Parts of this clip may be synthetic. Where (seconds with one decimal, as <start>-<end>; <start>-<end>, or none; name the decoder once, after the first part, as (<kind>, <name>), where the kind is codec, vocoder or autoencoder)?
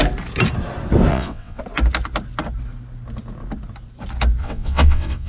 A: 1.1-1.6 (vocoder, WaveNeXt); 4.4-5.3